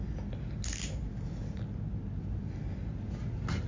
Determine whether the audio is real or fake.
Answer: real